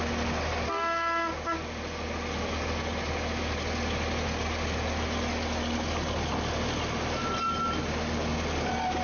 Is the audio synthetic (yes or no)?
no